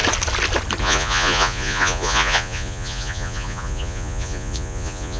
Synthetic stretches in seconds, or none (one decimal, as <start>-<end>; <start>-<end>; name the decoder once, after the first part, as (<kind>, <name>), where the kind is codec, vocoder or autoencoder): 0.8-5.2 (vocoder, Vocos)